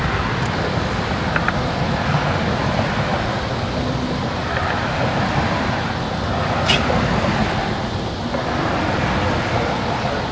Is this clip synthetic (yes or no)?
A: no